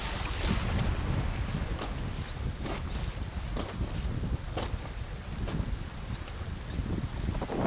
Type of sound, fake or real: real